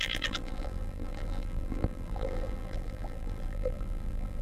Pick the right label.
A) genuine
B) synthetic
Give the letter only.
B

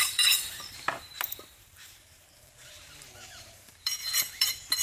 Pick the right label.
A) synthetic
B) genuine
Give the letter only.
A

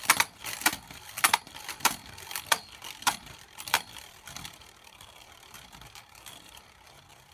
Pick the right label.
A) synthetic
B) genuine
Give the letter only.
A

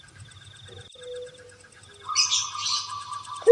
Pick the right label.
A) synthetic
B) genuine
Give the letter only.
B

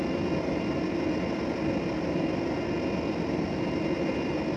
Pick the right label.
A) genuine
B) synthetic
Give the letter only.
A